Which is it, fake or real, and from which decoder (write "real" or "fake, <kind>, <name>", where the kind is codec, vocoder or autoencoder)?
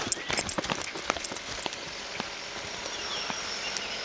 real